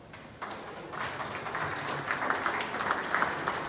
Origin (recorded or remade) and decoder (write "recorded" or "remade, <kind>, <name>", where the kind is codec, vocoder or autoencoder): recorded